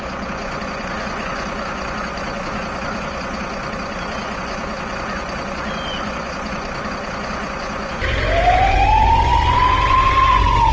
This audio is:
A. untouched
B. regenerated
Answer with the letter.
B